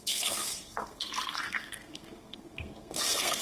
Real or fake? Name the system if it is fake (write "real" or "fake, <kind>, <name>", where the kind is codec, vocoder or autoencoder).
fake, codec, SNAC